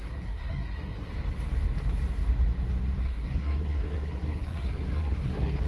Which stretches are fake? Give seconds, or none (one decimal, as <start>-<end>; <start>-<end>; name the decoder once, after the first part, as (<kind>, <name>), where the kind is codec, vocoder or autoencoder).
0.0-1.1 (codec, SNAC); 3.0-5.7